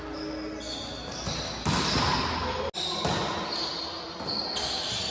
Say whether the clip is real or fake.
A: real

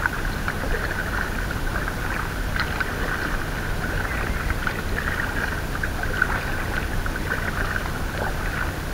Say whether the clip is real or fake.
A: real